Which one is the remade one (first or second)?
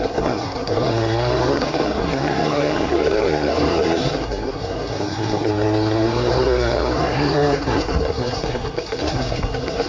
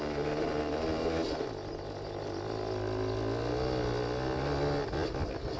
first